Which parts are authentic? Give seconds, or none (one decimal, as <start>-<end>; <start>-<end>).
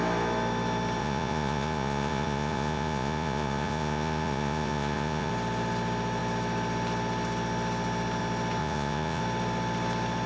0.0-1.0; 5.3-8.6; 9.2-10.3